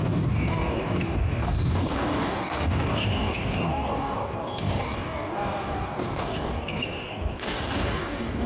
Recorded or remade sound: remade